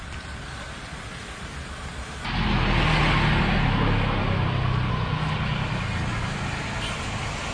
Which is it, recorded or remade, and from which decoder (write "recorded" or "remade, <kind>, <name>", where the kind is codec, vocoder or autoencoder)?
recorded